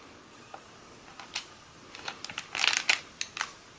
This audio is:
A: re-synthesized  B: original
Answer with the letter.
B